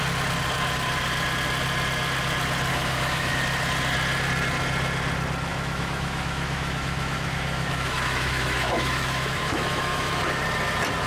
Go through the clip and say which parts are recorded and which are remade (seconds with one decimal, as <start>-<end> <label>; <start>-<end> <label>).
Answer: 0.0-2.7 recorded; 2.7-3.3 remade; 3.3-5.5 recorded; 5.5-10.2 remade; 10.2-11.1 recorded